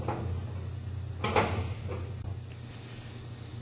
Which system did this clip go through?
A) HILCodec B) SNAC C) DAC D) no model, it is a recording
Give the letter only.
D